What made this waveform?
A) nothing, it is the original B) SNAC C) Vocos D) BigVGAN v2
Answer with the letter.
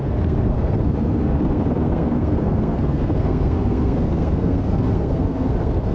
B